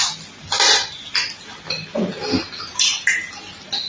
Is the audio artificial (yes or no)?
no